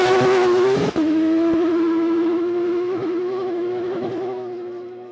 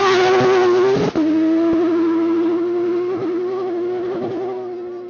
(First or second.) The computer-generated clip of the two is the first